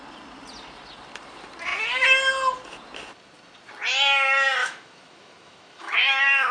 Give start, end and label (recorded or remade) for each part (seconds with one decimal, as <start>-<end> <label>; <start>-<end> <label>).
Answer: 0.0-4.6 recorded; 4.6-6.1 remade; 6.1-6.5 recorded